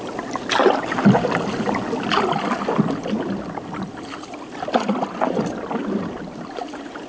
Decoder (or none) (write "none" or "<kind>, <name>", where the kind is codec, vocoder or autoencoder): none